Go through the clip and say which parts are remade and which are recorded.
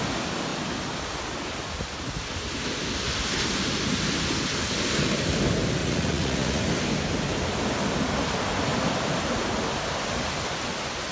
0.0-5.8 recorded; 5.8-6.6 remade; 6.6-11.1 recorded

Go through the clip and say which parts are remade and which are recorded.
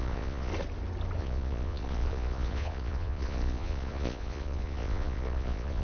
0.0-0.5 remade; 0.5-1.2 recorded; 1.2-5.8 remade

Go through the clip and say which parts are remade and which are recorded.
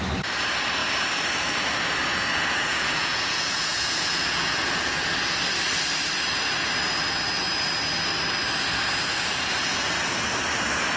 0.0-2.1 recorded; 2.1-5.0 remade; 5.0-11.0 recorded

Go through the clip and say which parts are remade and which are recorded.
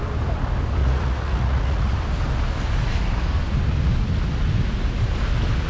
0.0-0.8 recorded; 0.8-2.0 remade; 2.0-5.7 recorded